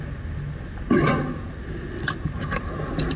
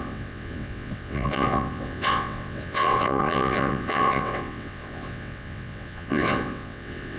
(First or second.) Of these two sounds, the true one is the first